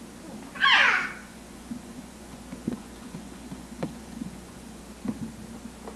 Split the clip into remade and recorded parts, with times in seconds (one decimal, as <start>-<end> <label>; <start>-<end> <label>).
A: 0.0-1.2 recorded; 1.2-4.8 remade; 4.8-6.0 recorded